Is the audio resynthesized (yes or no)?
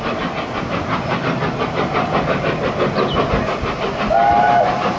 no